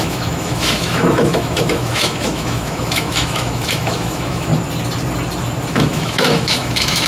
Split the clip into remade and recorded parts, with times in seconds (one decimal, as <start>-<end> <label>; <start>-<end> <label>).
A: 0.0-4.5 remade; 4.5-5.7 recorded; 5.7-7.1 remade